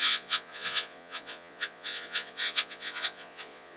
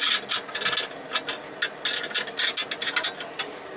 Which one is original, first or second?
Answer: second